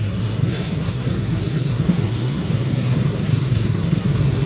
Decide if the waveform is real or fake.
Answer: fake